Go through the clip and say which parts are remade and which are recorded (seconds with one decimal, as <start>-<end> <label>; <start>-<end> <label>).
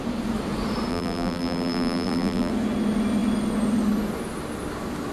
0.0-0.9 recorded; 0.9-2.5 remade; 2.5-5.1 recorded